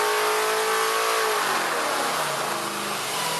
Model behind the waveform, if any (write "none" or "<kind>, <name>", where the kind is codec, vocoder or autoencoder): none